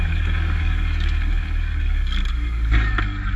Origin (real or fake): fake